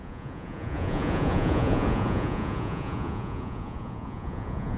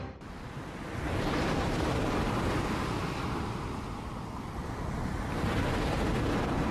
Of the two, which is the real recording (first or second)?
second